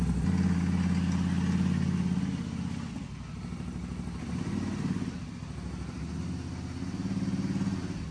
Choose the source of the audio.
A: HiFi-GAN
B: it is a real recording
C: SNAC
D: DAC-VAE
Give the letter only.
B